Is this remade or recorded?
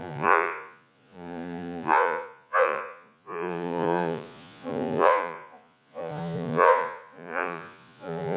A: remade